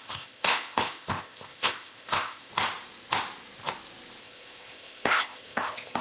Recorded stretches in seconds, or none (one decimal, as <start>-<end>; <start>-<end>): 2.5-4.2